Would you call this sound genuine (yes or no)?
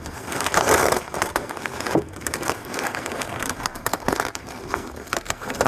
no